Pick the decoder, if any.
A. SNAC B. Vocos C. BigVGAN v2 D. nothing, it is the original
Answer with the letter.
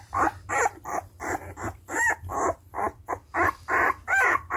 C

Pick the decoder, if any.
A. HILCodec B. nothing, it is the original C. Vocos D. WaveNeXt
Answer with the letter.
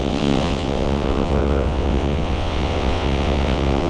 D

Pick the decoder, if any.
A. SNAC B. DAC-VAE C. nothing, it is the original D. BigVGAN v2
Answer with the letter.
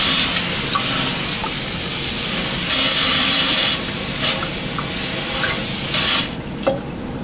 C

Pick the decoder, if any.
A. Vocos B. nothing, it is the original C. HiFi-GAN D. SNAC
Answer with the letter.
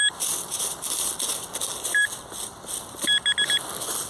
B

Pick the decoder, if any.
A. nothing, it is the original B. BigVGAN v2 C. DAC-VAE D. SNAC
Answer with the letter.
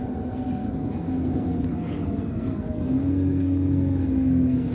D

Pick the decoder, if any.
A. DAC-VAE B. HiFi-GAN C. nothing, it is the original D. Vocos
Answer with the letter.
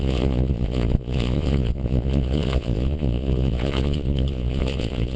D